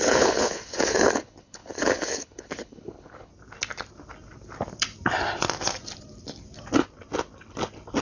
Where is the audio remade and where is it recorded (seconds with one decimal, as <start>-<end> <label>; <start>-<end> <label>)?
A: 0.0-3.3 remade; 3.3-8.0 recorded